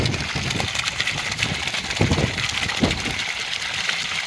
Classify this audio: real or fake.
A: real